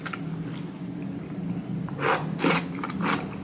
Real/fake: real